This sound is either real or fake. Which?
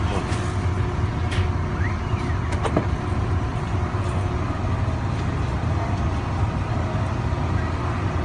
real